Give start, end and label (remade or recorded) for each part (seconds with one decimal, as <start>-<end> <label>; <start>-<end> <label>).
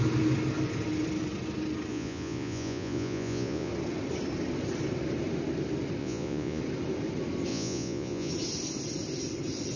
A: 0.0-1.9 recorded; 1.9-3.7 remade; 3.7-6.0 recorded; 6.0-6.6 remade; 6.6-7.5 recorded; 7.5-8.3 remade; 8.3-9.8 recorded